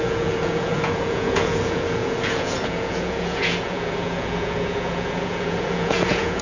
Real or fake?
fake